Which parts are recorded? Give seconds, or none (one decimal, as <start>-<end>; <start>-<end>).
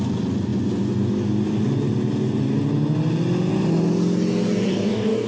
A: 0.0-4.7